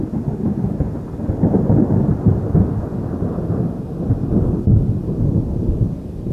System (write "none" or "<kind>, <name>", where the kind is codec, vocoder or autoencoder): none